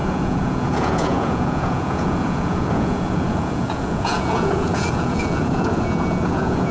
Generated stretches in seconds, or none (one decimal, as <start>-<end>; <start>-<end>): 0.0-6.7